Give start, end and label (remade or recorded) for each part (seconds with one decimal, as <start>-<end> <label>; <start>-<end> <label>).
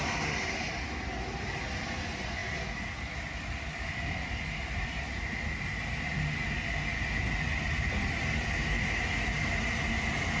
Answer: 0.0-10.4 recorded